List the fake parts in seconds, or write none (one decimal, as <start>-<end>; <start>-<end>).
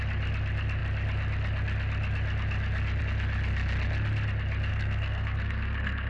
4.7-6.1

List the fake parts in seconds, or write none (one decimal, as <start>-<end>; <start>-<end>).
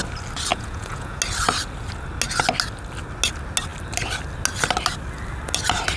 0.5-1.2